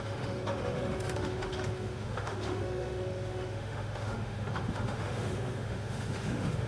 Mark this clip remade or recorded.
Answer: remade